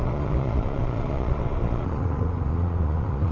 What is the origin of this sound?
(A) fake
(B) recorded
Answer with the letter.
A